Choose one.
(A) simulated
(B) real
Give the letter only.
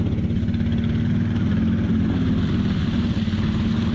B